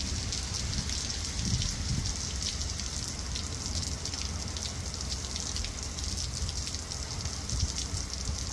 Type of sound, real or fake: real